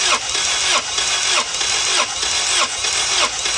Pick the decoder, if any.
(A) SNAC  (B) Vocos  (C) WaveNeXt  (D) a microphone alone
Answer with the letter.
D